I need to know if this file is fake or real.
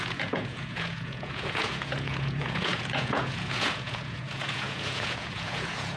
fake